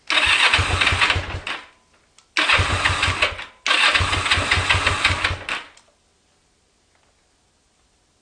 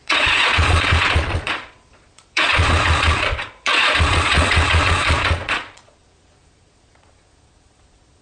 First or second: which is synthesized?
second